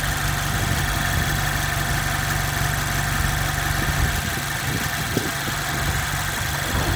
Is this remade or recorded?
recorded